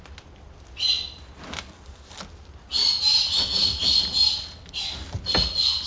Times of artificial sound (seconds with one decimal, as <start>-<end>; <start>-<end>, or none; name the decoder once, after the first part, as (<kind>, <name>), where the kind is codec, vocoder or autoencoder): 2.8-3.4 (vocoder, BigVGAN v2)